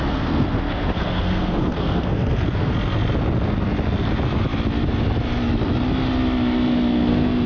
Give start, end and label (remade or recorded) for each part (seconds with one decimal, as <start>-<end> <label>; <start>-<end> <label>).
0.0-2.7 remade; 2.7-7.1 recorded; 7.1-7.5 remade